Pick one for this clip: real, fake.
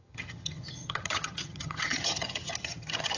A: fake